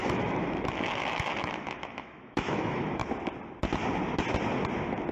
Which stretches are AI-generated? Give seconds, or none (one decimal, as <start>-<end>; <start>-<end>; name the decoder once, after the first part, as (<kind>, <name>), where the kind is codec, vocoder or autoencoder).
0.0-3.0 (autoencoder, DAC-VAE)

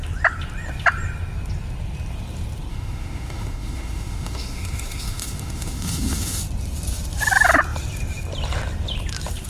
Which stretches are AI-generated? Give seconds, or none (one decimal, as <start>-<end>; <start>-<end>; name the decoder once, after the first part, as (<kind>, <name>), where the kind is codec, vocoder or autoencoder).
2.7-6.4 (autoencoder, DAC-VAE)

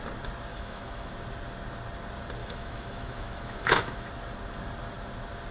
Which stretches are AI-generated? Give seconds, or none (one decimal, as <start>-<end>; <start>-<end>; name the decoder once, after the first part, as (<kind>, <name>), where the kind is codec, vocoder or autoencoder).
0.5-1.1 (autoencoder, DAC-VAE); 2.4-4.1